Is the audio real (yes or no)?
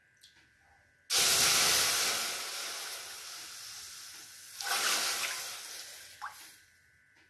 yes